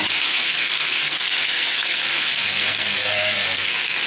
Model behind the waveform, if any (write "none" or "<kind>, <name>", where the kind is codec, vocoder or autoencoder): codec, SNAC